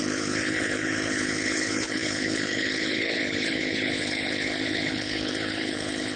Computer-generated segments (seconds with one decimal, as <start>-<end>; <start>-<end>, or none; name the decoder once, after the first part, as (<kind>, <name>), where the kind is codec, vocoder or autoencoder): 0.0-6.2 (codec, HILCodec)